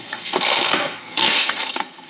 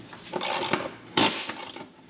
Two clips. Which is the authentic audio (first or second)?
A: second